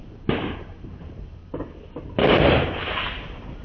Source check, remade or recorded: remade